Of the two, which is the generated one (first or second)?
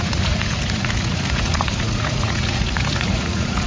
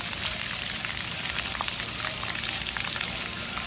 first